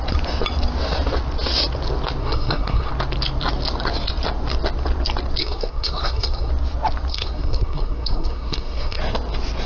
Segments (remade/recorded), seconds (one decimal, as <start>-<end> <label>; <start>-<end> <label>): 0.0-2.2 recorded; 2.2-2.9 remade; 2.9-5.4 recorded; 5.4-6.5 remade; 6.5-7.1 recorded; 7.1-9.0 remade; 9.0-9.7 recorded